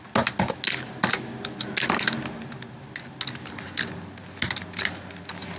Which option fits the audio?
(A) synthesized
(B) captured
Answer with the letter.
B